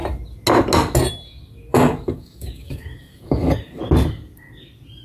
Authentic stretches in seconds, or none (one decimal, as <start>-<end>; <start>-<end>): 0.0-1.7; 3.8-5.0